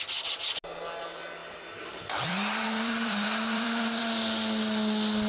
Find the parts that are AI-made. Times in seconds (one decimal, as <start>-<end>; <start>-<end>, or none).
1.4-4.0